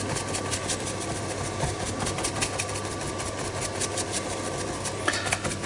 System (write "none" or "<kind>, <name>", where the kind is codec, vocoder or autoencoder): none